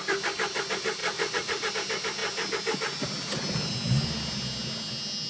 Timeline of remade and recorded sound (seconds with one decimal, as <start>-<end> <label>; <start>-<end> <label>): 0.0-1.0 recorded; 1.0-1.7 remade; 1.7-5.3 recorded